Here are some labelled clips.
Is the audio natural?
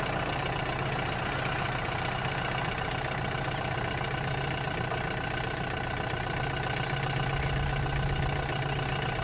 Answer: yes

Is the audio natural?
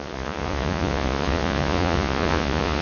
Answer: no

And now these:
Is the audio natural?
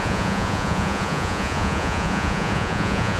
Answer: no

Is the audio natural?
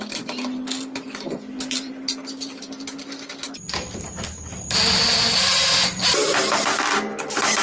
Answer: yes